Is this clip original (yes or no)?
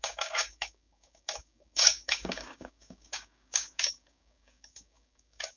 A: no